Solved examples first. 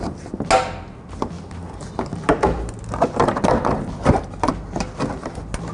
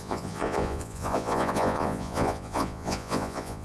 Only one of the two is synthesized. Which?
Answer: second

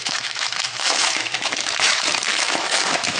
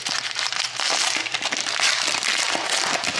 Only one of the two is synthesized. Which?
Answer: first